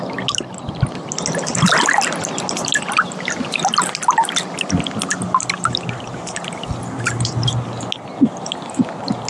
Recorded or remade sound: recorded